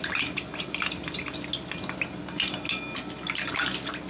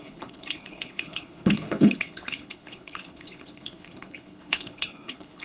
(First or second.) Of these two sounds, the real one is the first